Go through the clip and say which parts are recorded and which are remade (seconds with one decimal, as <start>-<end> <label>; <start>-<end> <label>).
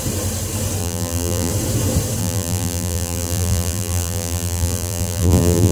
0.0-0.8 recorded; 0.8-1.5 remade; 1.5-2.2 recorded; 2.2-5.7 remade